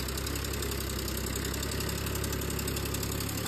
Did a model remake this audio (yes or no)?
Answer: no